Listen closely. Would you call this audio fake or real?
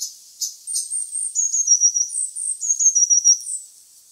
real